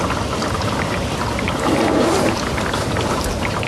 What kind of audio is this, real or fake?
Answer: real